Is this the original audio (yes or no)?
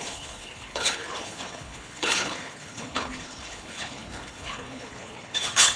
no